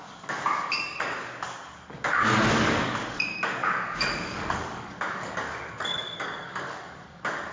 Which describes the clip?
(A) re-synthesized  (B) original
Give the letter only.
A